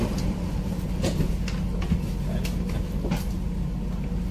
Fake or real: real